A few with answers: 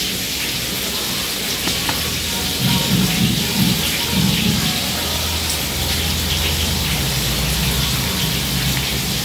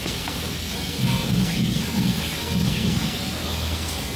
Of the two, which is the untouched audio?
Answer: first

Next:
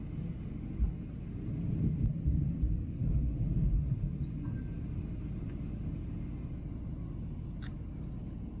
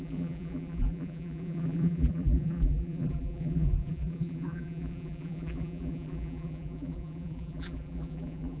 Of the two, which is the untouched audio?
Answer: first